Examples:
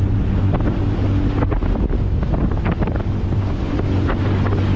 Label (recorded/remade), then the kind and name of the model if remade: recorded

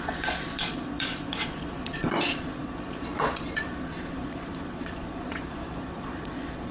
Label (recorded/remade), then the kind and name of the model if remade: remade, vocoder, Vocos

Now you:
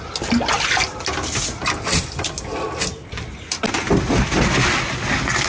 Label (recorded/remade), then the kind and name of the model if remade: recorded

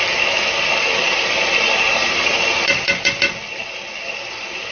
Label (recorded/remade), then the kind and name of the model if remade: recorded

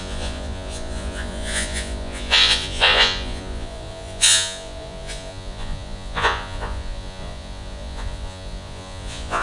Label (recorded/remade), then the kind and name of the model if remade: remade, vocoder, Vocos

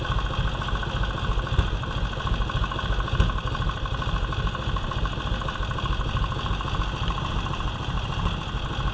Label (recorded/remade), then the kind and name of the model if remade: recorded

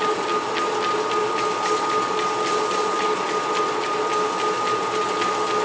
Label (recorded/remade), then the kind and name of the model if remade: recorded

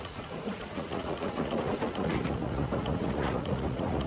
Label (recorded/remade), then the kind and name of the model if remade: remade, vocoder, Vocos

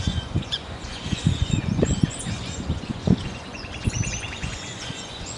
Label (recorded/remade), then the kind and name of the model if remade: remade, vocoder, Vocos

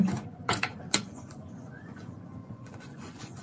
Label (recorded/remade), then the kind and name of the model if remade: remade, vocoder, Vocos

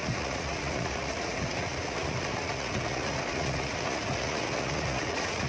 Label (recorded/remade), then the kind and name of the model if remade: remade, vocoder, Vocos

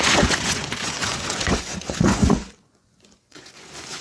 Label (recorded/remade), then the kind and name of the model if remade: remade, vocoder, Vocos